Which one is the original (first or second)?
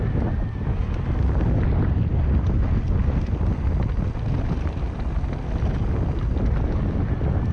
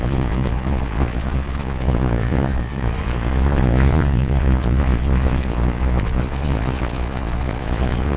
first